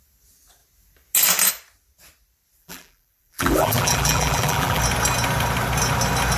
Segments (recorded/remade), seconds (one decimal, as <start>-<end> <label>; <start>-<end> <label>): 0.0-2.6 recorded; 2.6-4.8 remade; 4.8-6.4 recorded